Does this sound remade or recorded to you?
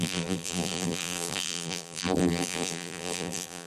remade